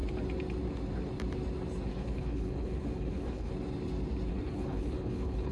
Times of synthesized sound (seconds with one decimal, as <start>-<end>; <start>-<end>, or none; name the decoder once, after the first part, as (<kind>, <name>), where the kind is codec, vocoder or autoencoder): 1.9-3.5 (codec, HILCodec); 4.3-5.5